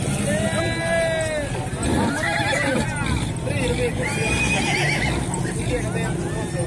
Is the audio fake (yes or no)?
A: no